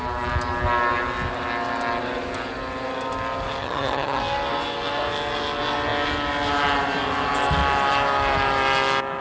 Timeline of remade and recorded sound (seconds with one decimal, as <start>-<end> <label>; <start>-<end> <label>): 0.0-3.6 recorded; 3.6-4.2 remade; 4.2-9.2 recorded